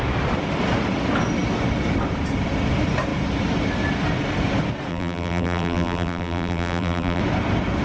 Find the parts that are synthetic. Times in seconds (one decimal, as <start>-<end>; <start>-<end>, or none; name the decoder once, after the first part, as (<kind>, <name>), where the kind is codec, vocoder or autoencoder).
4.9-7.2 (vocoder, BigVGAN v2)